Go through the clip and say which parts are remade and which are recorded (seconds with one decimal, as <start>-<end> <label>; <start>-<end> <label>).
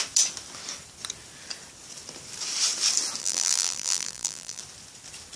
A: 0.0-3.2 recorded; 3.2-4.6 remade; 4.6-5.4 recorded